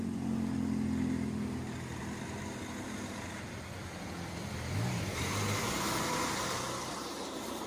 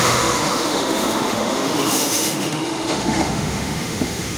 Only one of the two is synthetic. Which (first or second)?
second